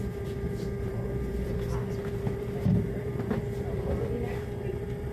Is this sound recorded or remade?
remade